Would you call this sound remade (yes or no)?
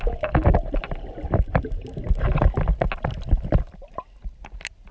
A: no